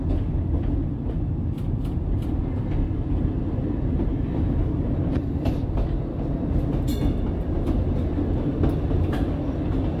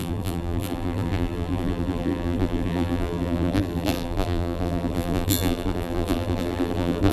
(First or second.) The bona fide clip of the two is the first